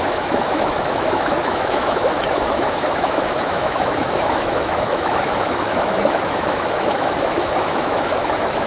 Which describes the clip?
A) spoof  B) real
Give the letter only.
A